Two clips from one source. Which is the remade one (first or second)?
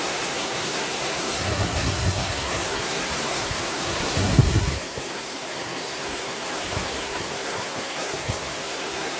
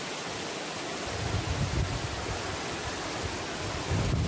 first